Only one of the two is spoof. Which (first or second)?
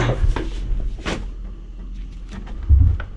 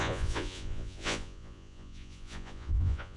second